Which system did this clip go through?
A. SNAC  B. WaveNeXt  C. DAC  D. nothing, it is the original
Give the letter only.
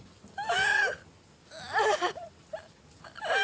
D